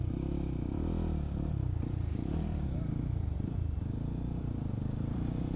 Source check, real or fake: fake